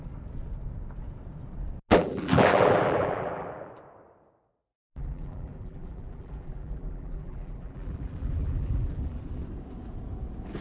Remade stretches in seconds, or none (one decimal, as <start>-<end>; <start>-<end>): 1.9-3.7; 4.7-9.2